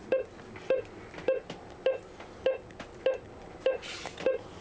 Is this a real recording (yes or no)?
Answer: yes